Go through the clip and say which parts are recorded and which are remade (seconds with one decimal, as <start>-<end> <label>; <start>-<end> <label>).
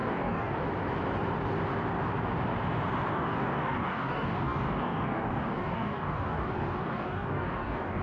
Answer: 0.0-0.7 remade; 0.7-3.1 recorded; 3.1-8.0 remade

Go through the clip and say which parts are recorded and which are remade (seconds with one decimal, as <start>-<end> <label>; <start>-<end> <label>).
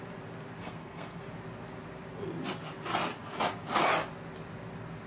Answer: 0.0-0.6 recorded; 0.6-1.2 remade; 1.2-5.1 recorded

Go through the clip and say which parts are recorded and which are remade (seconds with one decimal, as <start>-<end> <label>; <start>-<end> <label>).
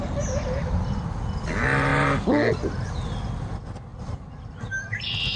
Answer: 0.0-5.4 recorded